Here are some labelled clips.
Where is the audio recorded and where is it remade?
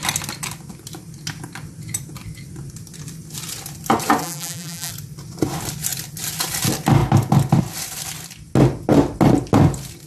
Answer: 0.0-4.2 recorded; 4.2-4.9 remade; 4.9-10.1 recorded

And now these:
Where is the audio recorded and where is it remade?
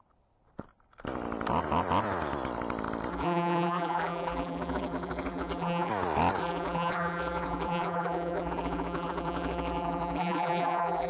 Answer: 0.0-3.1 recorded; 3.1-5.9 remade; 5.9-6.4 recorded; 6.4-11.1 remade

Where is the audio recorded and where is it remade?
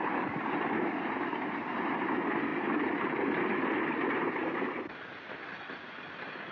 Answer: 0.0-6.5 recorded